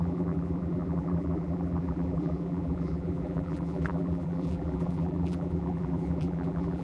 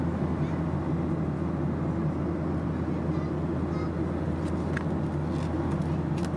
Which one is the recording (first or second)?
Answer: second